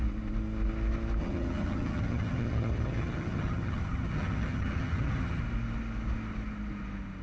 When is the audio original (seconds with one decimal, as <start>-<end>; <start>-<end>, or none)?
0.0-1.2; 5.4-7.2